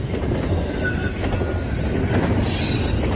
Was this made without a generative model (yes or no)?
yes